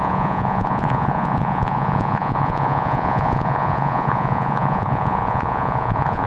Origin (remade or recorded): remade